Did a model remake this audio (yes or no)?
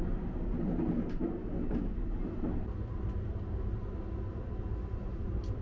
no